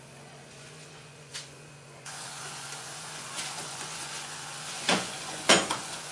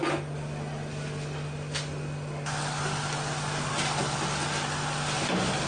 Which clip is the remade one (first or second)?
first